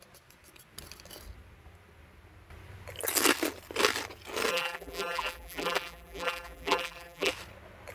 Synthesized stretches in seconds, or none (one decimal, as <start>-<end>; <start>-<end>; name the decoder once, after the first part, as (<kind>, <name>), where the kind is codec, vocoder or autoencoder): 4.5-7.3 (vocoder, BigVGAN v2)

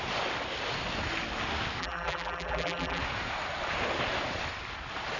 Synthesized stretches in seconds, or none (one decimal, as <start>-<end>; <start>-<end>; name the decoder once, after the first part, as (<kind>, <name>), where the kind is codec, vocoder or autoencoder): 1.8-3.0 (vocoder, BigVGAN v2)

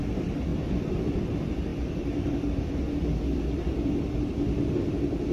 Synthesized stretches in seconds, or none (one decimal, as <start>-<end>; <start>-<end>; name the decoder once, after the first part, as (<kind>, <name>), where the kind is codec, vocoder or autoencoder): 0.5-1.2 (vocoder, BigVGAN v2); 1.7-2.9; 3.7-4.3

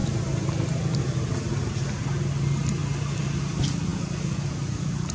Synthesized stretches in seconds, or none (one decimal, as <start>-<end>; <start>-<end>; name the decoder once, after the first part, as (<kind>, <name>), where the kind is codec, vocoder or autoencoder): none

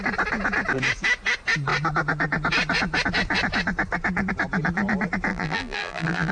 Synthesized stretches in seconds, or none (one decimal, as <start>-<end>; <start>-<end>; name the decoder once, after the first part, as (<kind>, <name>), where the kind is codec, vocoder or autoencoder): 5.3-6.3 (vocoder, BigVGAN v2)

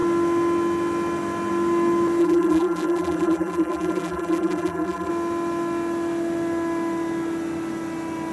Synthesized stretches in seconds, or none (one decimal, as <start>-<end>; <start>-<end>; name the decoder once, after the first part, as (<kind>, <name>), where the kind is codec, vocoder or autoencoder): 2.2-5.1 (vocoder, BigVGAN v2)

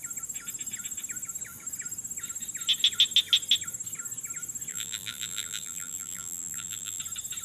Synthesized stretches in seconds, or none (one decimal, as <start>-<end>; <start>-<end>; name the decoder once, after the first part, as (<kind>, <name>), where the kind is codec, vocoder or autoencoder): 4.7-7.0 (vocoder, BigVGAN v2)

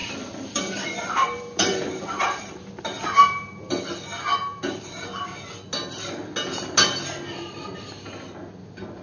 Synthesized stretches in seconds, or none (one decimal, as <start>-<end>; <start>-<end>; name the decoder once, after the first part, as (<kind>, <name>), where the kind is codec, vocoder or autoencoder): 0.0-2.7 (vocoder, BigVGAN v2); 4.5-5.2